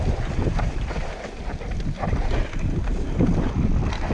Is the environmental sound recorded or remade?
recorded